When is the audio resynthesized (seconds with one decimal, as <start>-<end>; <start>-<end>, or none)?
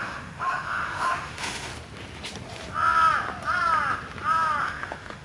0.0-1.7; 4.6-5.2